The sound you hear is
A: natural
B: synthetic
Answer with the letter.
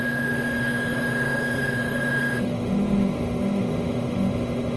B